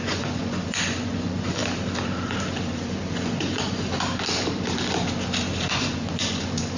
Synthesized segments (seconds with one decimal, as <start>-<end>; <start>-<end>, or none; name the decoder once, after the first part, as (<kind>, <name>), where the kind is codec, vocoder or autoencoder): 0.0-1.6 (vocoder, Vocos); 3.1-3.9; 5.7-6.8